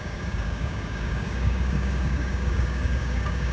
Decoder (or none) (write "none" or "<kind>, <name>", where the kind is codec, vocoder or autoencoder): codec, DAC